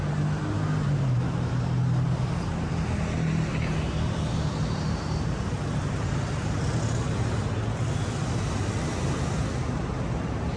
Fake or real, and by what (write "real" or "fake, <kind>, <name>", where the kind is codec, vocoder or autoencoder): real